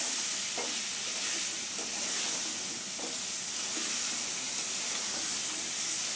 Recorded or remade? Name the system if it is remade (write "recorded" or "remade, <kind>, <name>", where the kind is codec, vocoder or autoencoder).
remade, vocoder, BigVGAN v2